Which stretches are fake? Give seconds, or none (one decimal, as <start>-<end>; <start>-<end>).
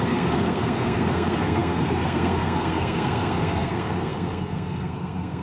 0.0-5.4